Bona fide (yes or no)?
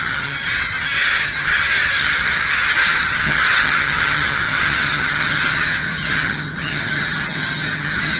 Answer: no